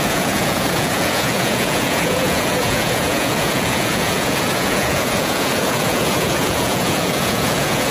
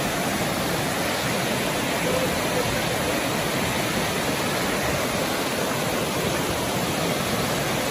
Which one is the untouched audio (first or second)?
second